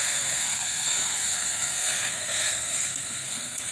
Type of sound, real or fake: fake